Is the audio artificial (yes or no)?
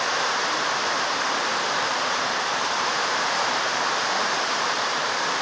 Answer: yes